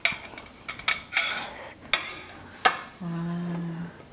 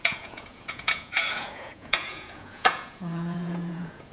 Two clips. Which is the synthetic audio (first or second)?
second